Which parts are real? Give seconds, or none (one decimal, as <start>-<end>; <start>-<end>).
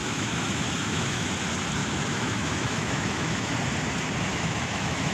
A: 1.3-1.8; 3.5-4.3